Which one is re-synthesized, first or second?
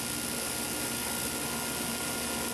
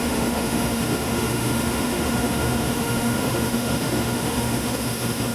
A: second